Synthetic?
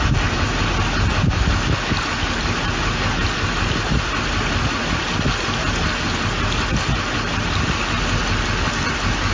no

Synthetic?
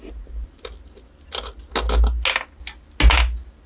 no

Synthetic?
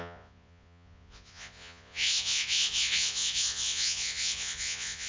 yes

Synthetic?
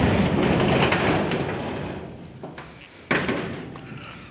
no